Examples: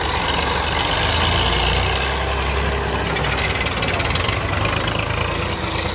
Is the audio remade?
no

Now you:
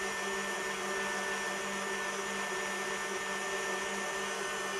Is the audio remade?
no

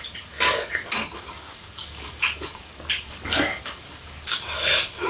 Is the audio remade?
yes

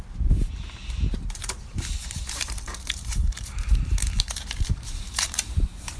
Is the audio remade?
yes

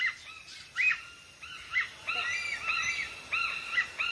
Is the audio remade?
no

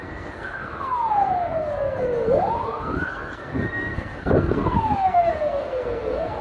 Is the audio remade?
yes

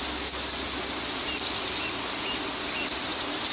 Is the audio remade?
no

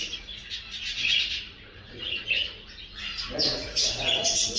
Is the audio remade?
yes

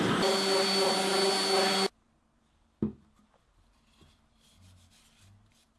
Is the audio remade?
no